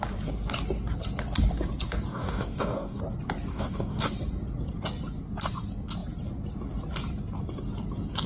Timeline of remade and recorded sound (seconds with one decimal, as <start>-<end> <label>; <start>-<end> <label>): 0.0-2.1 recorded; 2.1-3.0 remade; 3.0-3.5 recorded; 3.5-4.1 remade; 4.1-8.3 recorded